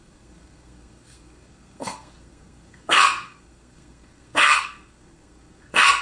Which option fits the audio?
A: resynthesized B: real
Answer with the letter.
A